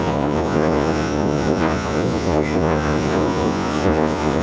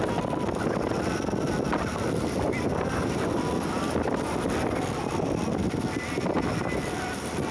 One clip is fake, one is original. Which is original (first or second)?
second